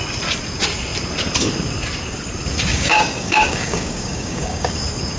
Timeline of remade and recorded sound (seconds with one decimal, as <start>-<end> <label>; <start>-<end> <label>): 0.0-2.7 recorded; 2.7-4.7 remade; 4.7-5.2 recorded